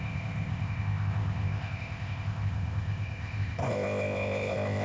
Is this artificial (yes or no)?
yes